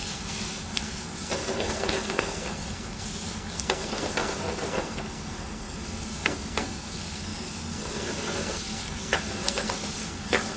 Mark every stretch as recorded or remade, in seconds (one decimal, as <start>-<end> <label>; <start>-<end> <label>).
0.0-10.6 remade